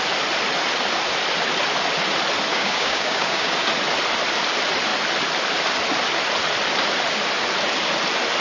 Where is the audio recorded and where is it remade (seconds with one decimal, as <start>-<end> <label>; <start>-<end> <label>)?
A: 0.0-2.5 recorded; 2.5-3.5 remade; 3.5-8.4 recorded